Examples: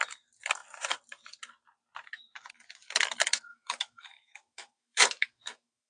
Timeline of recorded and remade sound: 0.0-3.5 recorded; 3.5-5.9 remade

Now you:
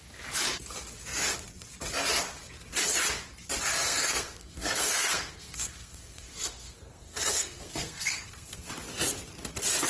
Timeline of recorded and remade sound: 0.0-3.7 recorded; 3.7-8.7 remade; 8.7-9.9 recorded

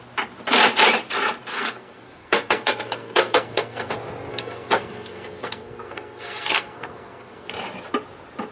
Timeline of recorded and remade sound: 0.0-1.5 recorded; 1.5-3.9 remade; 3.9-4.3 recorded; 4.3-7.5 remade; 7.5-8.5 recorded